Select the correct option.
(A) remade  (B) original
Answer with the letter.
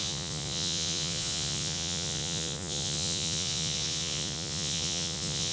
A